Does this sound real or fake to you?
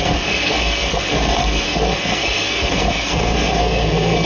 fake